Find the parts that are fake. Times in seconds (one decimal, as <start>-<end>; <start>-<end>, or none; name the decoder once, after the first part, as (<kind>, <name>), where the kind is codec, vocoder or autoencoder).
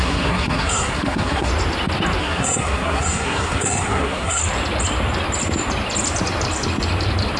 0.0-1.5 (codec, SNAC); 2.2-4.4